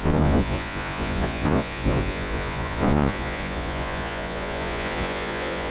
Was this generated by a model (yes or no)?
yes